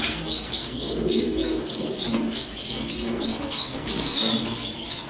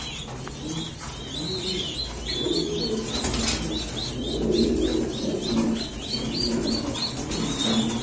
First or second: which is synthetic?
first